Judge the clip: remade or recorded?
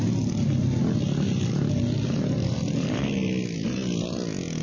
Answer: recorded